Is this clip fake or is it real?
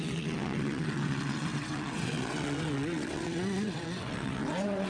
fake